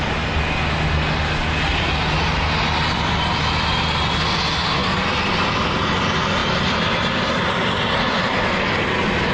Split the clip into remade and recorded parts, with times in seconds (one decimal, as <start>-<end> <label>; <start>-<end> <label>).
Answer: 0.0-9.3 recorded